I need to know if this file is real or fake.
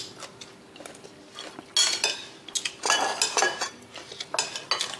real